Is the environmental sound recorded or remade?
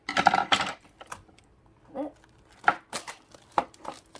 recorded